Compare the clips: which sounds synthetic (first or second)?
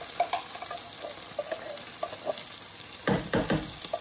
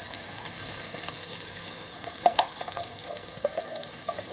second